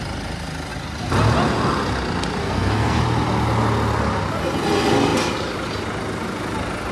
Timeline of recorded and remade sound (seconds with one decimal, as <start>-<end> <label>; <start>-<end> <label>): 0.0-2.4 recorded; 2.4-3.0 remade; 3.0-6.9 recorded